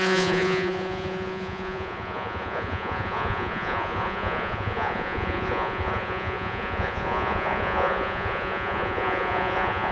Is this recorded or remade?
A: remade